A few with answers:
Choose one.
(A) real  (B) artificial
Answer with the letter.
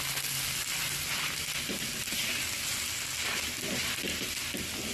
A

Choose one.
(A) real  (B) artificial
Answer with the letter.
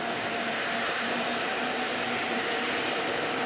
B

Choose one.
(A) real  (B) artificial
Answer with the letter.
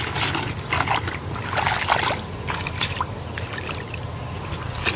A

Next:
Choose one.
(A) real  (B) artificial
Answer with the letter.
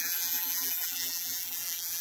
B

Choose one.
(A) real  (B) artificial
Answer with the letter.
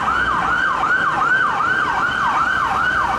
A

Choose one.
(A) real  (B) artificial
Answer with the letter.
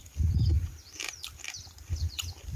B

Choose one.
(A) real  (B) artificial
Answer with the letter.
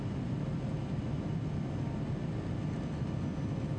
A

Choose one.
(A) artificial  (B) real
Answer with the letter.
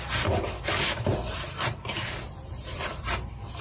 A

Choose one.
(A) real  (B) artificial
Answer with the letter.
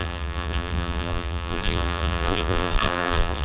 B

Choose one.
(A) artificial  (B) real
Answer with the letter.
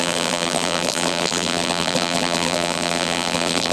A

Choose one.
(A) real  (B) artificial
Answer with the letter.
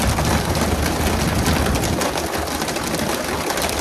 A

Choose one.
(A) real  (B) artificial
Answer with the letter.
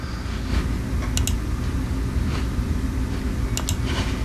A